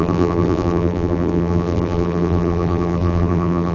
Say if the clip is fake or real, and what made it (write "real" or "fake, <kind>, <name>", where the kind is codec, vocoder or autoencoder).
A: fake, vocoder, BigVGAN v2